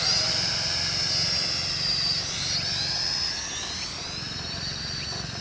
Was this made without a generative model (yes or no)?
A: yes